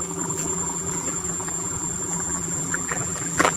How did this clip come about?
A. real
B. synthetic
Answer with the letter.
B